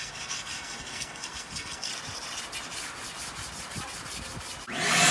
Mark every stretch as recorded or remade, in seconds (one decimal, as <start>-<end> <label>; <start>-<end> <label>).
0.0-1.9 remade; 1.9-5.1 recorded